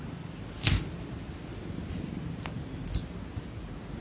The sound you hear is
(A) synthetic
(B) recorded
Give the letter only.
B